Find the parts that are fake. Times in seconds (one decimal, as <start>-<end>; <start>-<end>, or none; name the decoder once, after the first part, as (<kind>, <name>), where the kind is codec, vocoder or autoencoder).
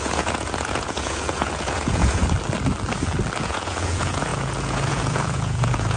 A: 0.0-2.2 (vocoder, Vocos); 3.4-6.0